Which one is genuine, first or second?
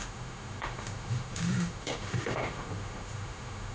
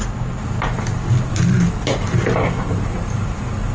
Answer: second